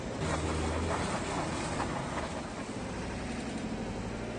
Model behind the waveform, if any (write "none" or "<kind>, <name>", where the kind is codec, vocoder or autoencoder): none